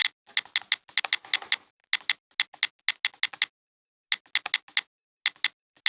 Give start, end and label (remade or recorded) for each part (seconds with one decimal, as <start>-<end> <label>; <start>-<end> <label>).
0.0-5.9 recorded